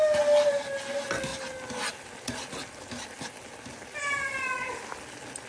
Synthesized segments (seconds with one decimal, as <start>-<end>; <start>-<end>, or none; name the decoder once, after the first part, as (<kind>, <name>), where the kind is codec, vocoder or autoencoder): none

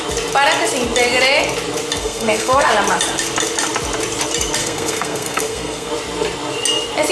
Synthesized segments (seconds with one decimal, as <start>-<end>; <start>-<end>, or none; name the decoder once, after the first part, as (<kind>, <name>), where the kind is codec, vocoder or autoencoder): 2.0-2.7 (codec, SNAC); 4.6-5.9

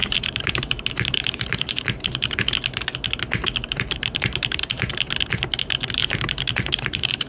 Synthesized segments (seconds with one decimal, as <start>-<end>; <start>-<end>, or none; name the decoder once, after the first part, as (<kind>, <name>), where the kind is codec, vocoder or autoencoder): 0.0-2.4 (vocoder, BigVGAN v2); 3.6-4.9; 6.0-7.3